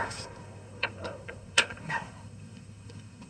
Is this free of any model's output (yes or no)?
no